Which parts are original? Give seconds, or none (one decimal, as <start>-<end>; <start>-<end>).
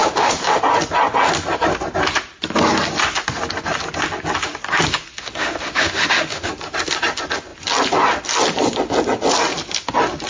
0.6-5.2; 6.5-10.3